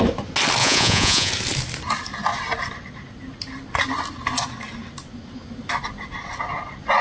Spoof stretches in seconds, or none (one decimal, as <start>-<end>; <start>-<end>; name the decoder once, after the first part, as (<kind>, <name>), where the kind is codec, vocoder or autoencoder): 0.6-1.3 (vocoder, Vocos)